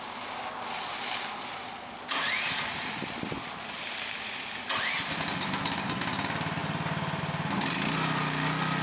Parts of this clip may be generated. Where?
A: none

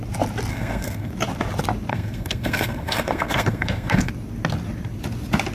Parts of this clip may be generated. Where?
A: 0.5-1.1 (codec, SNAC); 1.9-4.1

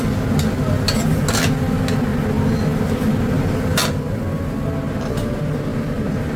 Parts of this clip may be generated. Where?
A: none